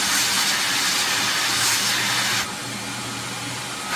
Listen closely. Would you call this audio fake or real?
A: real